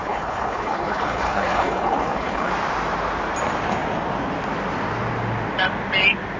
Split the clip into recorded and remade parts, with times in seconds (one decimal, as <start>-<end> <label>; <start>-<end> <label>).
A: 0.0-2.5 remade; 2.5-6.4 recorded